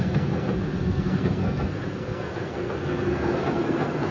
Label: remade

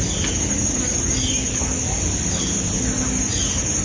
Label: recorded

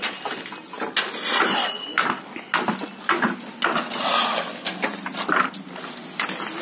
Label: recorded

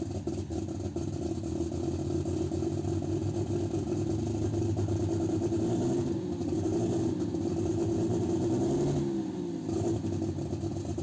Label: recorded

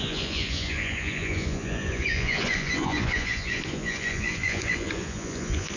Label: remade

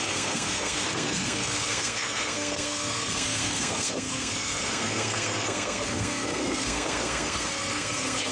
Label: remade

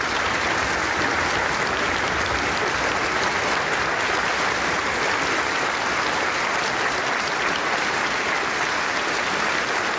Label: recorded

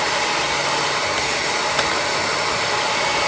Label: recorded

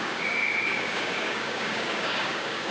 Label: remade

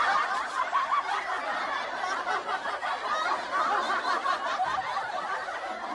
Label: recorded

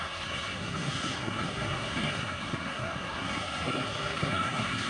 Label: remade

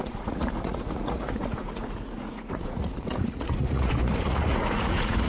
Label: remade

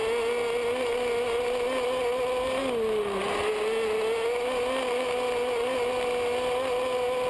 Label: recorded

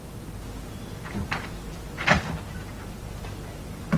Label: recorded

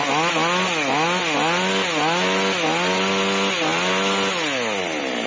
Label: recorded